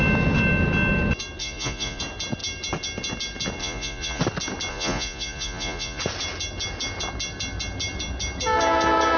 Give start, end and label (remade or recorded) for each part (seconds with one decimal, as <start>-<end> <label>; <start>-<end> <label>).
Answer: 0.0-1.4 recorded; 1.4-2.0 remade; 2.0-3.6 recorded; 3.6-4.2 remade; 4.2-4.7 recorded; 4.7-6.0 remade; 6.0-9.2 recorded